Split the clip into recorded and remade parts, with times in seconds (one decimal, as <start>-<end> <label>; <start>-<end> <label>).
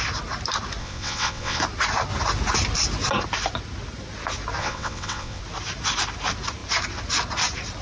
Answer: 0.0-0.8 recorded; 0.8-1.6 remade; 1.6-4.6 recorded; 4.6-5.4 remade; 5.4-7.8 recorded